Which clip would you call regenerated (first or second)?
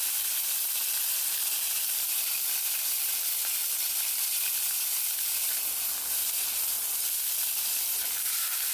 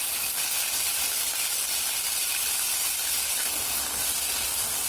first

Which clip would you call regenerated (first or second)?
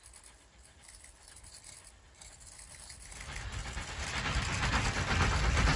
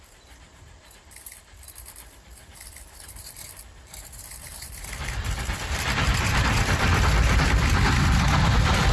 second